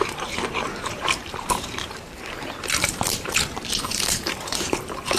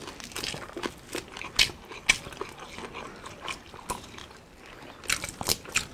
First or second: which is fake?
first